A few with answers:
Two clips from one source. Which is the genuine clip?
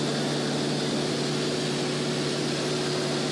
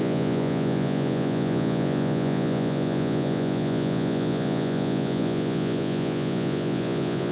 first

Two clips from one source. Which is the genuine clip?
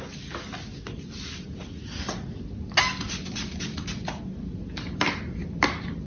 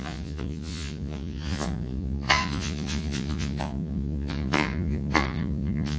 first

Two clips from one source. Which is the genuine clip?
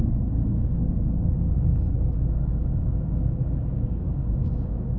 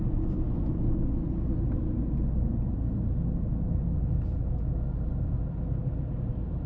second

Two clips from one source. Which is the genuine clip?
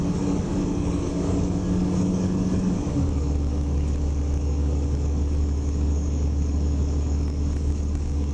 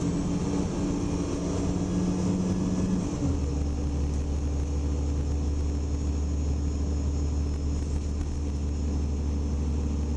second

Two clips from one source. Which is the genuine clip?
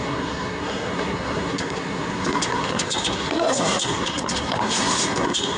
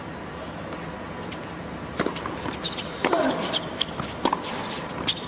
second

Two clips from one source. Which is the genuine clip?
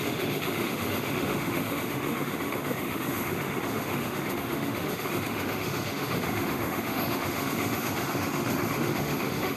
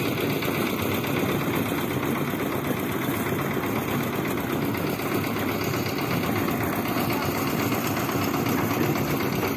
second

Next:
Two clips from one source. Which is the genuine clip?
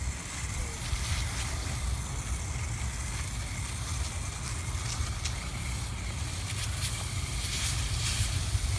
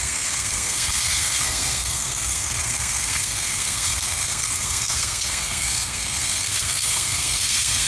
first